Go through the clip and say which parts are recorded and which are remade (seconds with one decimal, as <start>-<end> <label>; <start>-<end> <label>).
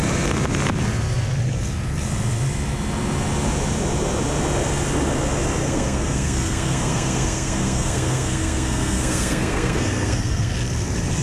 0.0-5.6 recorded; 5.6-10.5 remade; 10.5-11.2 recorded